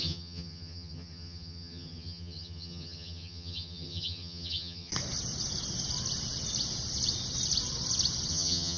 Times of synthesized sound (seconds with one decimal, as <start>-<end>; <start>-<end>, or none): 0.0-4.9; 8.3-8.8